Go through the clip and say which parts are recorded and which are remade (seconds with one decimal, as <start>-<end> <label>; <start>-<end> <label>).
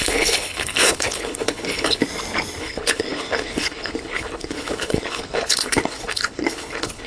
0.0-2.0 remade; 2.0-2.6 recorded; 2.6-7.1 remade